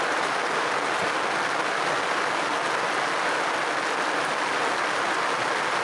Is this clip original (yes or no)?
yes